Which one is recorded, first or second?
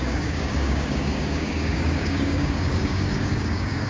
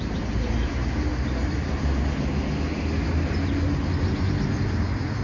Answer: second